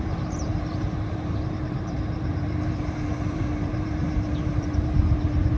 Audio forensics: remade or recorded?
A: remade